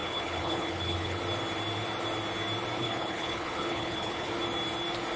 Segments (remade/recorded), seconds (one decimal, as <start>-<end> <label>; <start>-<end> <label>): 0.0-1.2 remade; 1.2-2.8 recorded; 2.8-4.3 remade; 4.3-5.2 recorded